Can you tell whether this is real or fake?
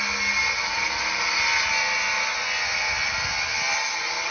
real